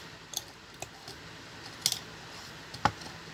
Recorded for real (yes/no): yes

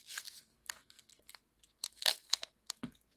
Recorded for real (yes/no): no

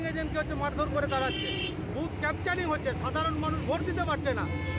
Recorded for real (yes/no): yes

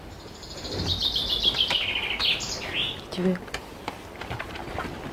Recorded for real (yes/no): yes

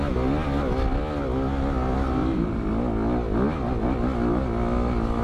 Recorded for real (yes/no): yes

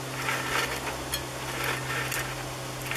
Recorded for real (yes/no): yes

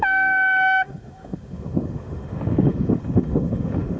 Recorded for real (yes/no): no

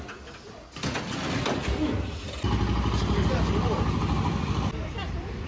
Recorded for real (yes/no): yes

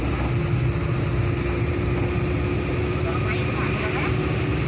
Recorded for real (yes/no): yes